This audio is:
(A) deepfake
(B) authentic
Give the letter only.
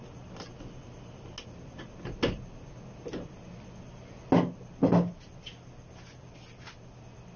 B